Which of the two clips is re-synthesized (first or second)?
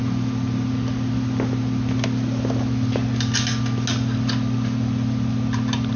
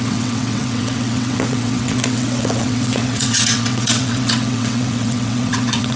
second